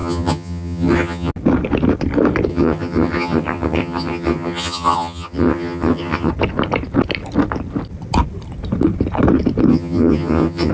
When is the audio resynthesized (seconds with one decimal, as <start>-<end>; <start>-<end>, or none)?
0.0-1.3; 2.5-6.3; 9.7-10.7